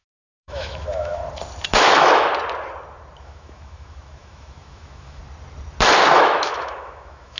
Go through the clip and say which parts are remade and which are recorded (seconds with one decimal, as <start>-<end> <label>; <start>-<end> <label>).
0.0-1.2 remade; 1.2-1.8 recorded; 1.8-2.3 remade; 2.3-3.2 recorded; 3.2-5.2 remade; 5.2-6.1 recorded; 6.1-7.4 remade